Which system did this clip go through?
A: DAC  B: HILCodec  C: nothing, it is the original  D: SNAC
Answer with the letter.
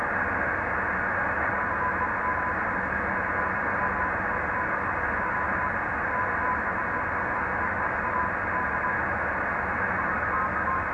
C